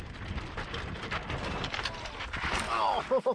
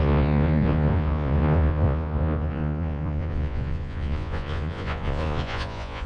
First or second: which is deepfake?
second